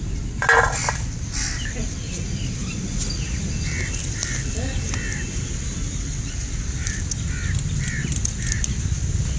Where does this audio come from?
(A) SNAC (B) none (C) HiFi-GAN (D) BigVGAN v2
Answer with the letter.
B